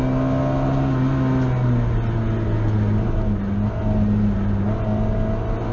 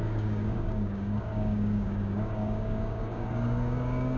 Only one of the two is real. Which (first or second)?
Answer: first